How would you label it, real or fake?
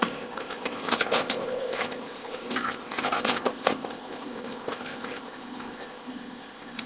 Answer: fake